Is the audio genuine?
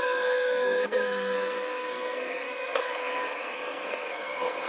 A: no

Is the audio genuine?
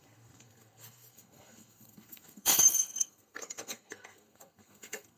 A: no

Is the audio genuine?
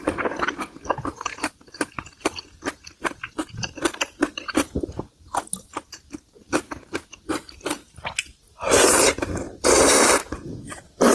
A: yes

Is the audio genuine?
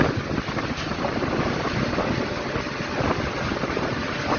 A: yes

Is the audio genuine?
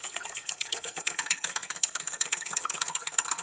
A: no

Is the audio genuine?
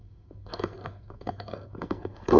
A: no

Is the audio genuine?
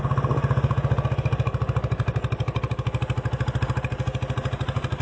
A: yes